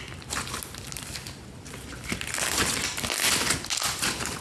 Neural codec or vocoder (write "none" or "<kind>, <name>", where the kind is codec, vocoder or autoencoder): none